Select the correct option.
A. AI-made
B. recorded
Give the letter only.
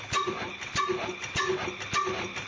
B